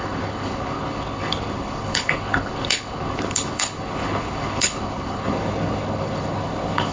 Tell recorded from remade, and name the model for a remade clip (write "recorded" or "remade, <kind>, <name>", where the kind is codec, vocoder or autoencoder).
remade, codec, HILCodec